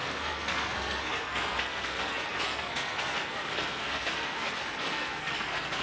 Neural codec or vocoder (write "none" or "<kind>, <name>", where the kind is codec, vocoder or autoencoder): codec, SNAC